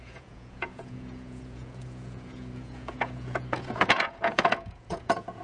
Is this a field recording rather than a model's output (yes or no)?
no